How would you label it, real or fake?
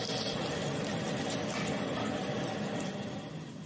real